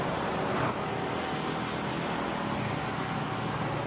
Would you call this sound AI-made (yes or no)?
no